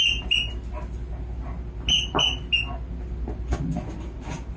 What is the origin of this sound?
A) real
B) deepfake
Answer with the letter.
A